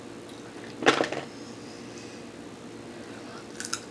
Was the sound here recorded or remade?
recorded